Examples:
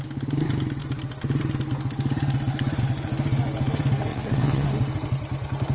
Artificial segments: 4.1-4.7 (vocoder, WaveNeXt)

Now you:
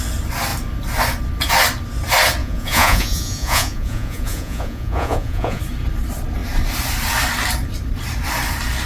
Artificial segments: 2.4-5.6 (vocoder, Vocos)

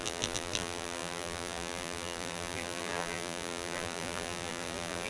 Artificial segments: 0.0-5.1 (vocoder, BigVGAN v2)